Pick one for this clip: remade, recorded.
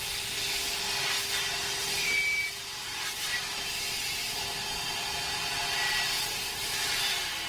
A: recorded